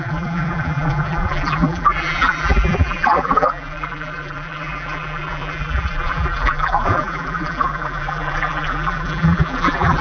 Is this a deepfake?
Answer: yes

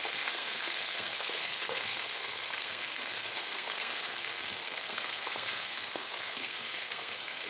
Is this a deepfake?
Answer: yes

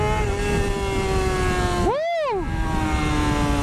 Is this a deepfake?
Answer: no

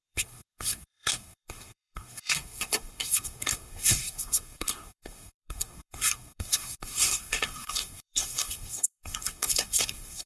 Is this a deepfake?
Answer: yes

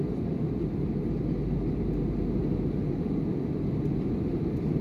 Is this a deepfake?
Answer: no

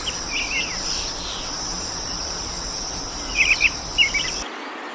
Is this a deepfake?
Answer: no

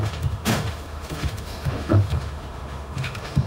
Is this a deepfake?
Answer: yes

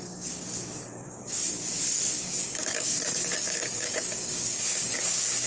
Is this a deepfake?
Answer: yes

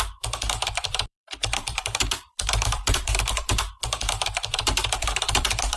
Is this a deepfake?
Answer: yes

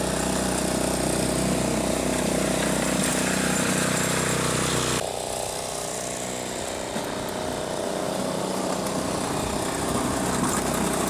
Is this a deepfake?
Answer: no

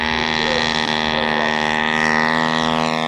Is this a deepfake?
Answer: no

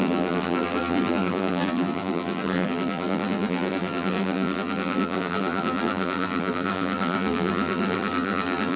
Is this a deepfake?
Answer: yes